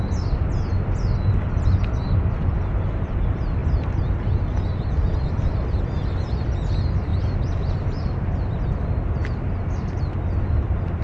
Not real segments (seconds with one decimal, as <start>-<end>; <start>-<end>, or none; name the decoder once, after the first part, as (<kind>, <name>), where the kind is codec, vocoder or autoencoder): none

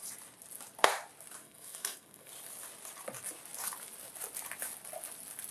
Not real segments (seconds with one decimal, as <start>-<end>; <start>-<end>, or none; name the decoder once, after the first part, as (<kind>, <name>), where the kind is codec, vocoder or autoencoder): 1.4-2.3 (codec, SNAC)

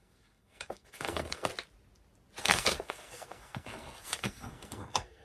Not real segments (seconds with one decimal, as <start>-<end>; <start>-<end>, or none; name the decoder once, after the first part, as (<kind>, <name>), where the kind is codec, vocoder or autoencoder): 0.0-1.5 (codec, SNAC); 2.4-5.2

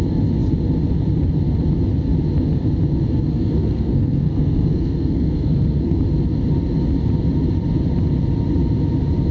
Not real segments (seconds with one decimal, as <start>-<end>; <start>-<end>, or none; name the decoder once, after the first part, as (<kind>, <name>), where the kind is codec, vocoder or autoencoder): 3.3-6.0 (codec, SNAC)